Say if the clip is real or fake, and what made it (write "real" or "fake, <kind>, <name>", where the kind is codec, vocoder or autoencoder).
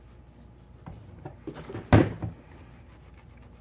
real